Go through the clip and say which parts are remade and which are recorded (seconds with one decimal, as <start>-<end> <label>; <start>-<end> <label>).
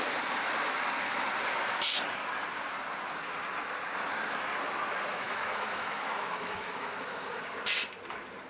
0.0-5.1 recorded; 5.1-7.4 remade; 7.4-8.5 recorded